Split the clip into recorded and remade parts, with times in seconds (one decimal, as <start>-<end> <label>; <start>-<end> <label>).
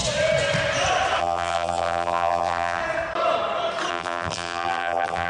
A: 0.0-1.2 recorded; 1.2-2.8 remade; 2.8-3.9 recorded; 3.9-5.3 remade